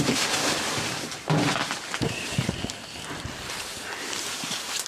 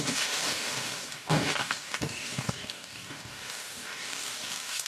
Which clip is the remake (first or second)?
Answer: second